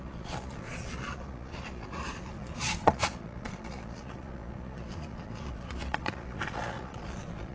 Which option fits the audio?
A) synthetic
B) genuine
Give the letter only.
A